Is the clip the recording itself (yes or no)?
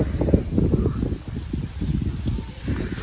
yes